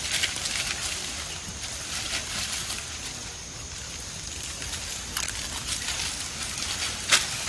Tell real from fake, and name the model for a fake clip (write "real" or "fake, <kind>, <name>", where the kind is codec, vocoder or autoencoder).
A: real